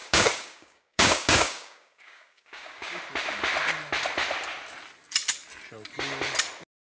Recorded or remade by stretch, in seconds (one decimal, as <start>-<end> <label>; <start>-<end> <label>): 0.0-3.0 remade; 3.0-6.9 recorded